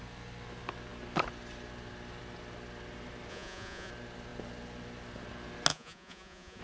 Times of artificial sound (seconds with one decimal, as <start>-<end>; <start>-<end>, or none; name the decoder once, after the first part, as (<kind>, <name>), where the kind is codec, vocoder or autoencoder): 3.3-3.9 (vocoder, Vocos); 5.7-6.6